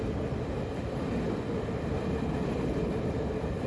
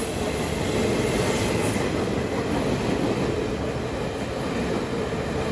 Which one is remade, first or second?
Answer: first